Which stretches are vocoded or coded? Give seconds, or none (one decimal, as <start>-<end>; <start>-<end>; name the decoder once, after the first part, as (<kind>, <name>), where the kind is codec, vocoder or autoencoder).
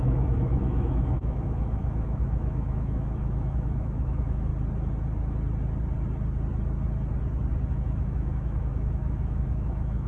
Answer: 0.0-4.5 (autoencoder, DAC-VAE); 7.7-10.1